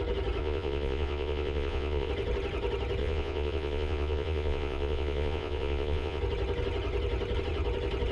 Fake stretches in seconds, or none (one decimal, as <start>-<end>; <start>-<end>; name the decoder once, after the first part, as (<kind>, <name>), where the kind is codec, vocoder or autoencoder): 0.4-2.1 (vocoder, Vocos); 3.0-6.2